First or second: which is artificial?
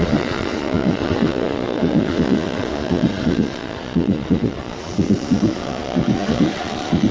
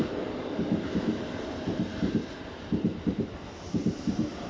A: first